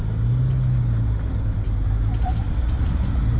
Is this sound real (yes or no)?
yes